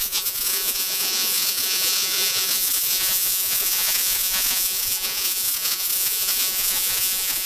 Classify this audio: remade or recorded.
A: remade